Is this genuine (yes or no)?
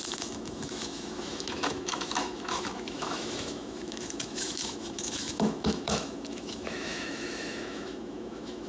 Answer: no